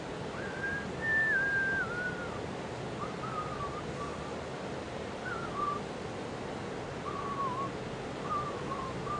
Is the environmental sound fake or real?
real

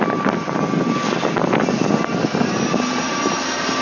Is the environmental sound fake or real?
real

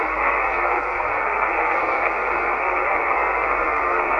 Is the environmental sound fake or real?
fake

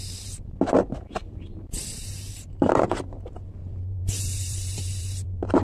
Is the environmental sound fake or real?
fake